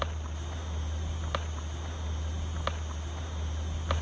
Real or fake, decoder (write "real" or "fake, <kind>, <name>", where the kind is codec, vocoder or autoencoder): real